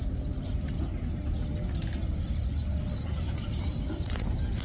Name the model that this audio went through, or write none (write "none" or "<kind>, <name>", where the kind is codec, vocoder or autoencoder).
none